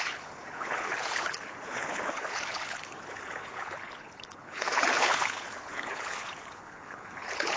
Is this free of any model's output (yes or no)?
no